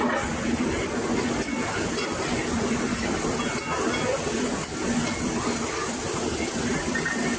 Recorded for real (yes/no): yes